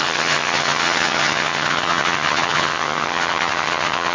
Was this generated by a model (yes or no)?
yes